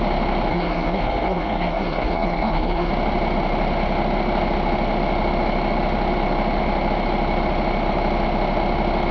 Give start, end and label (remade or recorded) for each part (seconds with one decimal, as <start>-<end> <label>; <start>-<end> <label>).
0.0-0.5 recorded; 0.5-2.9 remade; 2.9-9.1 recorded